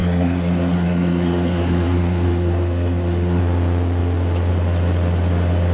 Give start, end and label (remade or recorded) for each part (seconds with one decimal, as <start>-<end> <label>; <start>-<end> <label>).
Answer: 0.0-3.4 remade; 3.4-5.7 recorded